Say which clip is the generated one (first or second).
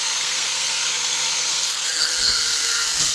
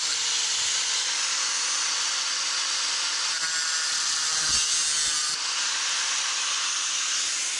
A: first